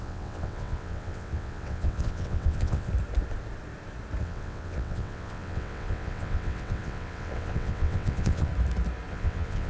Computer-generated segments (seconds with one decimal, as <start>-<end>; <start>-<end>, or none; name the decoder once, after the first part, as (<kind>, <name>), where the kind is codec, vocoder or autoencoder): 0.0-2.9 (vocoder, WaveNeXt); 4.2-8.5; 9.1-9.7